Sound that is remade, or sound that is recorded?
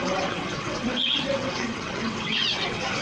remade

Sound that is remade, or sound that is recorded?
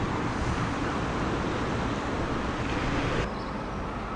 recorded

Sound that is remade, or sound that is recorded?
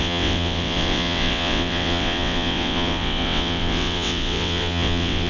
remade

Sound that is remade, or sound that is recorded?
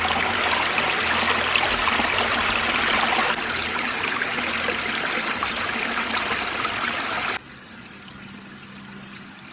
recorded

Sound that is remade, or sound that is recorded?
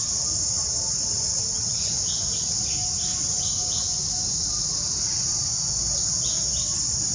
recorded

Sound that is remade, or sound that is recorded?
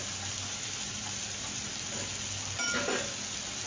recorded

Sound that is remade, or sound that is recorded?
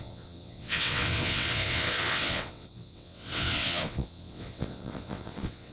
remade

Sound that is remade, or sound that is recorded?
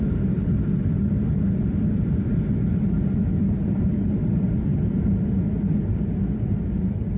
recorded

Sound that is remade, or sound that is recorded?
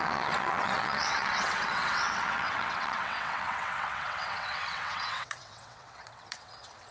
remade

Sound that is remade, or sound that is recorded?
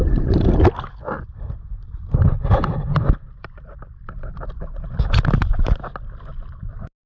recorded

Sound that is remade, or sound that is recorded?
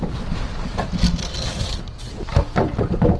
recorded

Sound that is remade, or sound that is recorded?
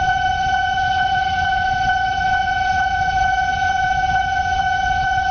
remade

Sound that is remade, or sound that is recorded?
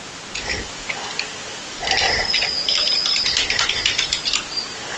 recorded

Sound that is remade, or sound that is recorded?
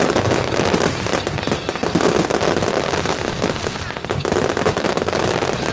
recorded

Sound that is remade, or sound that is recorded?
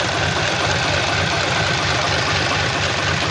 recorded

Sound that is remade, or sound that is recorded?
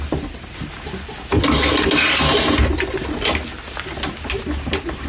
recorded